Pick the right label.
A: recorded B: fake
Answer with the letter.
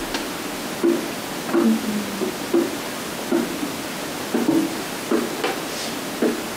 A